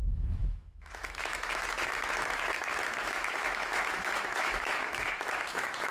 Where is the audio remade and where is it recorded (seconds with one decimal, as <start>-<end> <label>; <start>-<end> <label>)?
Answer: 0.0-5.9 remade